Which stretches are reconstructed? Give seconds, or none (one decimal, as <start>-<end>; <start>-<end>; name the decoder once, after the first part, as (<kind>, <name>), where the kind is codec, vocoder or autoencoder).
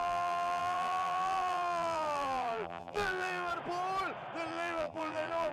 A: 0.0-3.5 (vocoder, BigVGAN v2); 4.5-5.5